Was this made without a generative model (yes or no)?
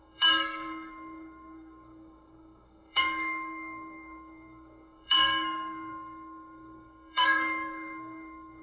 no